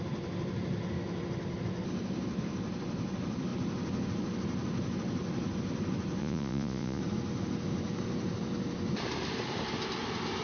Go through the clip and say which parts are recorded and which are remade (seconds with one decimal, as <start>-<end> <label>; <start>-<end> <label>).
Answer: 0.0-6.2 recorded; 6.2-7.0 remade; 7.0-10.4 recorded